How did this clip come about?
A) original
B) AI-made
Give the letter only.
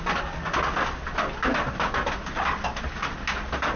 A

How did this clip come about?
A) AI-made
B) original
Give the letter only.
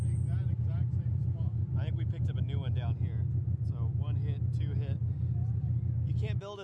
B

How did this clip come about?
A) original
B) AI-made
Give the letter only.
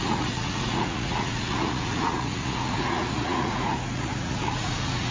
B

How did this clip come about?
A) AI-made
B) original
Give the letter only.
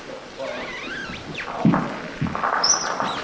A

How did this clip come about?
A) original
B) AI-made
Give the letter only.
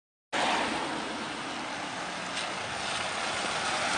A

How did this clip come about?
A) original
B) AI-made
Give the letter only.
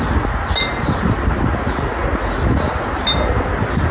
A